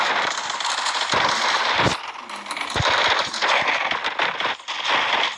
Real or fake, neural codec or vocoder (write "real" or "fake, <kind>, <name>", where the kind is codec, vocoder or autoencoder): real